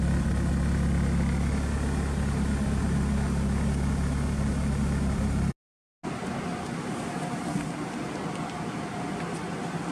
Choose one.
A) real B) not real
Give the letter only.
A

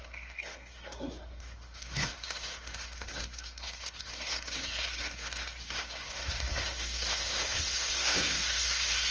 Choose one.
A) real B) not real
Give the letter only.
B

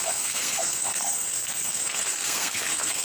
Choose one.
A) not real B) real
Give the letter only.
A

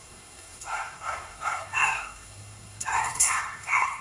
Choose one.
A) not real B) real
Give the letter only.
A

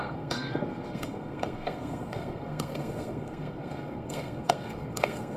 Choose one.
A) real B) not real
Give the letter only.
B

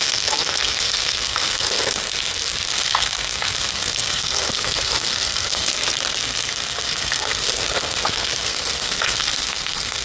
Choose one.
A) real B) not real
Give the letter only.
B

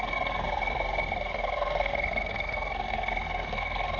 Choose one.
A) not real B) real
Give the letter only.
A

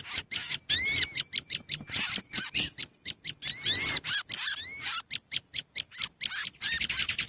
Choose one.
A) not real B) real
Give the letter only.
B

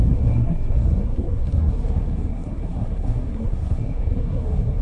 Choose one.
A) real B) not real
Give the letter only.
B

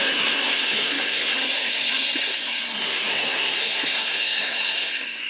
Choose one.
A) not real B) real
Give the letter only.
A